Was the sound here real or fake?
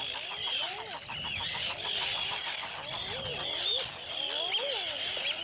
real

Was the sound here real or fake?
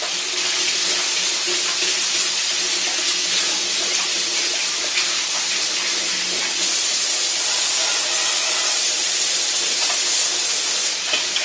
real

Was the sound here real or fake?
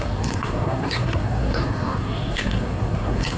fake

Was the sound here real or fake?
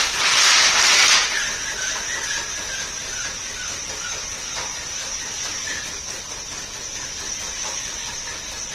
real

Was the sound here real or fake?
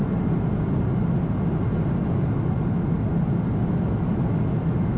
real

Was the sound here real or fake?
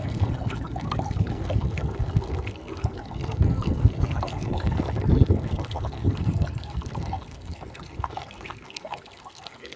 fake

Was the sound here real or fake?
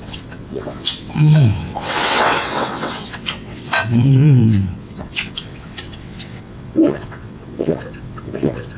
fake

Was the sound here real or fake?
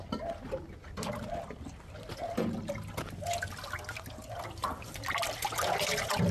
real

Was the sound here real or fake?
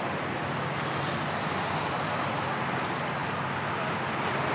real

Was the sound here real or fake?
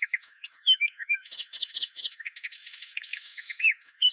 fake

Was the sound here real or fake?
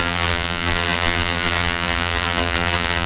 fake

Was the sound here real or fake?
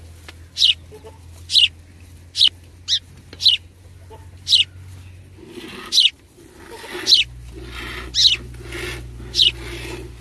real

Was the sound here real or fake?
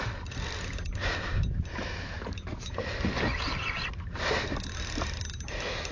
real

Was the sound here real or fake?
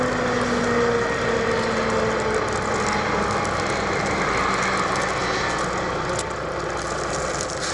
real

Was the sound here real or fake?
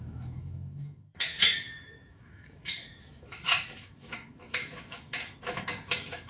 fake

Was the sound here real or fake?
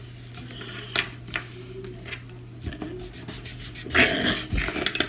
real